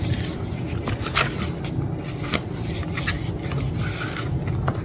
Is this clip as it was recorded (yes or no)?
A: yes